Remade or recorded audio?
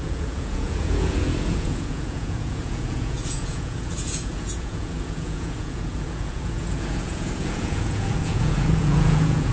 remade